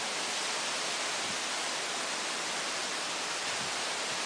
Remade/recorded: recorded